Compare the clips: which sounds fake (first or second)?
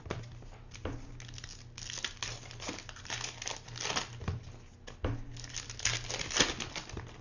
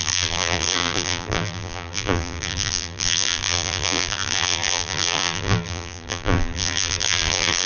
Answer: second